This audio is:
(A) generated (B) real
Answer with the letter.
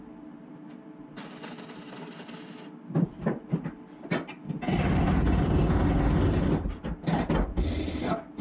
B